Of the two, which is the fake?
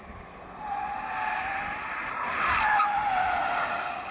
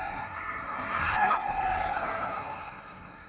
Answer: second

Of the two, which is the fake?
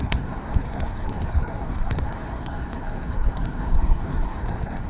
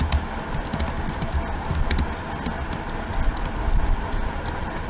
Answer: first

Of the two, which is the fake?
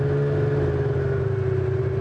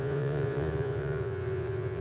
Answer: second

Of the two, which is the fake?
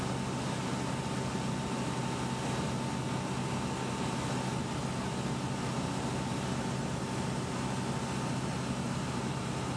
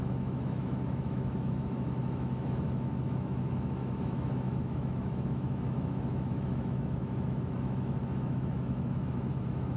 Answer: second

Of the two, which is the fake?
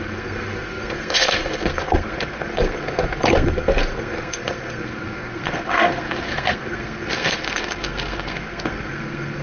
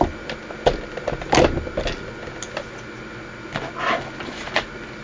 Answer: first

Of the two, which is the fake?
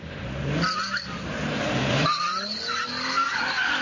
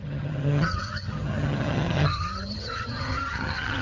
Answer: second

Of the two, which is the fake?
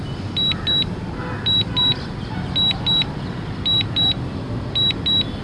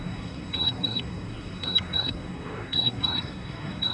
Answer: second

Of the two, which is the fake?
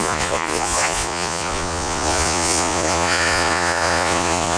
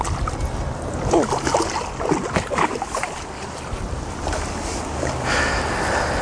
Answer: first